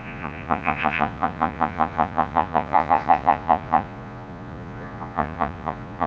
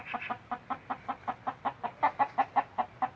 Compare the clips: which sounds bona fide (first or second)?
second